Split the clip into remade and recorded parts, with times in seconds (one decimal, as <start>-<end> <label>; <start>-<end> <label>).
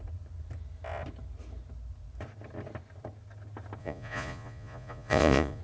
0.0-3.8 recorded; 3.8-5.6 remade